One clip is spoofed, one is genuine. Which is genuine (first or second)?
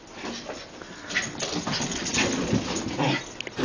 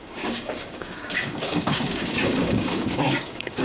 first